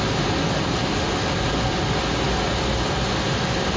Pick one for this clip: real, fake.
real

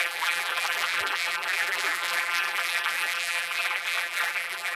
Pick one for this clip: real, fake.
fake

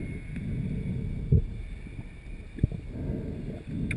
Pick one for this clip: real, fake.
real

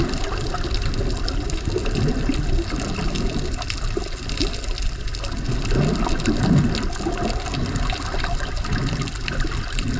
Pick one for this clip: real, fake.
real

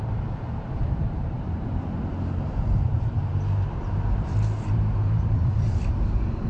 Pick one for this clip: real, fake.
fake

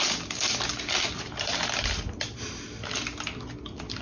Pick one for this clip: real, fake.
real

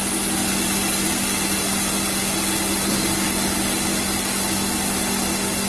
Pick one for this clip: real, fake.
real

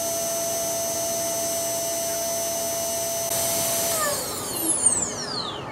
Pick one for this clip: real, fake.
real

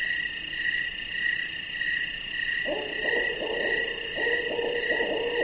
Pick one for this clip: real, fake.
real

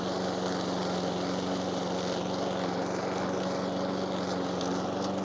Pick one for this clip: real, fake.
real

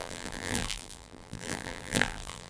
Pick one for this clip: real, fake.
fake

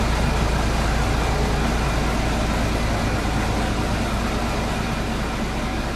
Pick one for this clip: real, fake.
real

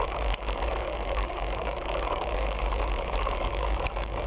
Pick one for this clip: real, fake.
fake